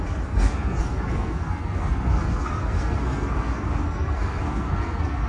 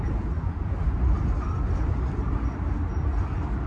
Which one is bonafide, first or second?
second